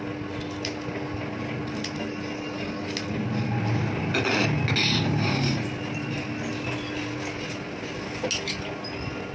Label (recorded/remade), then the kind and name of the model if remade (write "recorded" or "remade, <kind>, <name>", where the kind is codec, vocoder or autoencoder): recorded